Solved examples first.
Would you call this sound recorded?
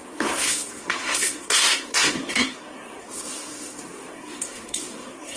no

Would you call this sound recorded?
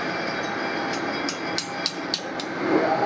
yes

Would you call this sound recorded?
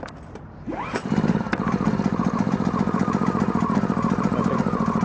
yes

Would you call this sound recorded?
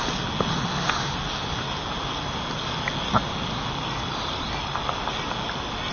yes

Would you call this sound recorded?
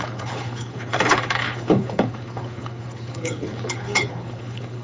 no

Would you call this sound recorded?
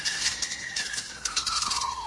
no